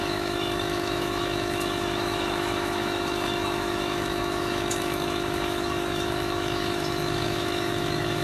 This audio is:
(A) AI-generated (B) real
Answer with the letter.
A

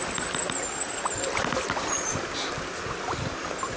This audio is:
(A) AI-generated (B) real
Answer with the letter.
B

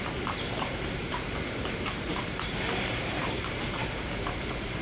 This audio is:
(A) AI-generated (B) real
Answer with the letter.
A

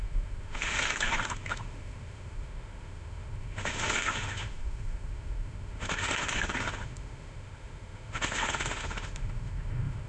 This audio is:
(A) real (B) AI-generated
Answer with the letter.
B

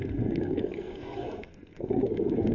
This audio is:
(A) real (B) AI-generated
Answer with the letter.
B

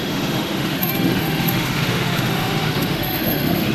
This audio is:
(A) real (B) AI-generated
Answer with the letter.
B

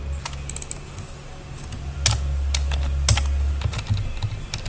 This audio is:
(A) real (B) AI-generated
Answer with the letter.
A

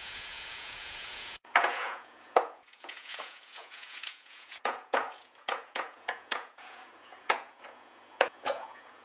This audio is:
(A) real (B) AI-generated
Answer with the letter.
B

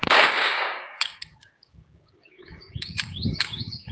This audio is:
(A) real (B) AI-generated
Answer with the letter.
B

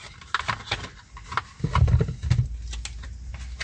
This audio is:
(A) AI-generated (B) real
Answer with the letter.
B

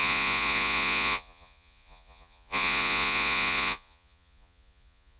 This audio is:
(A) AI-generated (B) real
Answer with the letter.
A